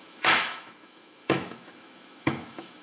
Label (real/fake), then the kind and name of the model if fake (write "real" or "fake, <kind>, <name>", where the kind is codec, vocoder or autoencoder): fake, autoencoder, DAC-VAE